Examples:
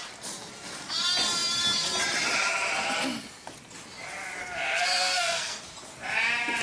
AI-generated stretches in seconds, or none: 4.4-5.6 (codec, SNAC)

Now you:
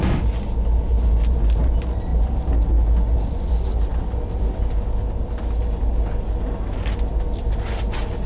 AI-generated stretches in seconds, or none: none

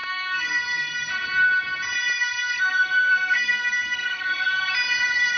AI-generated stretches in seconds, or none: 0.0-0.9 (codec, SNAC); 2.3-4.7

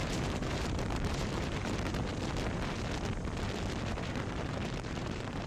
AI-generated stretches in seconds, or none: 0.0-2.1 (vocoder, BigVGAN v2); 3.9-5.5

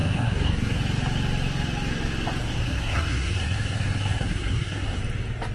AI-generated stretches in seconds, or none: 0.0-0.8 (codec, SNAC); 2.4-5.0

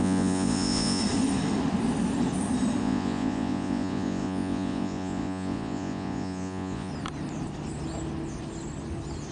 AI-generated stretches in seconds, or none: 0.0-1.0 (vocoder, Vocos); 2.8-6.9

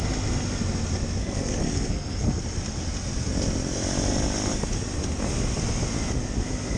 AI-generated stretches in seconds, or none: 1.2-2.4 (codec, SNAC)

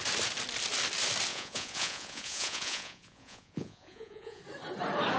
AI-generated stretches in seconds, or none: 1.3-4.4 (vocoder, Vocos)